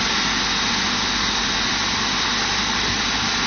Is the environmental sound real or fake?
real